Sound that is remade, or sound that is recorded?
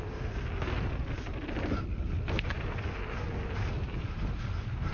recorded